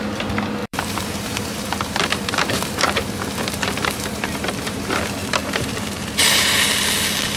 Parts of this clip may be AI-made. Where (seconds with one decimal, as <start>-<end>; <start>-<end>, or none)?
0.6-5.0; 5.4-6.7